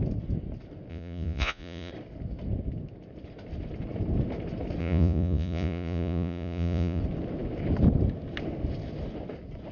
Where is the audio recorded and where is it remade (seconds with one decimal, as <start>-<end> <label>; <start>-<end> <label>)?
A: 0.0-0.9 recorded; 0.9-1.9 remade; 1.9-4.8 recorded; 4.8-7.0 remade; 7.0-9.7 recorded